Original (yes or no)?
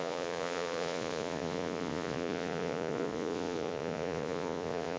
no